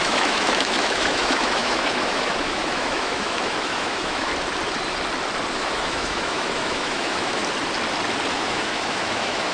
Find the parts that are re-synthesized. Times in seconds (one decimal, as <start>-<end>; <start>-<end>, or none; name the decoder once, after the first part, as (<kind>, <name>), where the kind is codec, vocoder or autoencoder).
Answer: 0.0-4.3 (autoencoder, DAC-VAE); 5.5-7.4; 8.3-9.5